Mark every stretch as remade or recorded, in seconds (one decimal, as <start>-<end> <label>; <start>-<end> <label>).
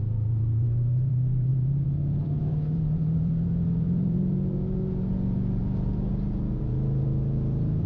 0.0-7.9 remade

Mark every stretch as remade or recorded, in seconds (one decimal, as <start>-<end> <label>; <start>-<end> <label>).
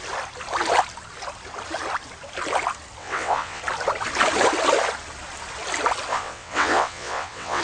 0.0-3.0 recorded; 3.0-3.6 remade; 3.6-6.1 recorded; 6.1-7.6 remade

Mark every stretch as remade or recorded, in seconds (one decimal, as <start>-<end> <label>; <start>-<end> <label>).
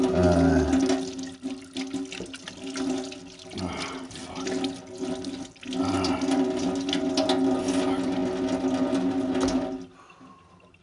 0.0-10.8 recorded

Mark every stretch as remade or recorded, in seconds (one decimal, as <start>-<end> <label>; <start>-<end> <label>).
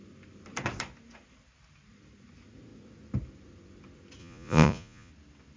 0.0-4.2 recorded; 4.2-5.1 remade; 5.1-5.6 recorded